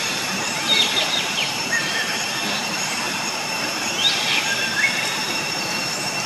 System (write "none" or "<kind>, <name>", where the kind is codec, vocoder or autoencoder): vocoder, BigVGAN v2